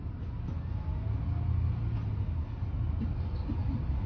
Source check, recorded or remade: recorded